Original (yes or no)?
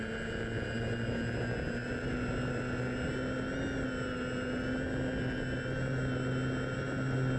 yes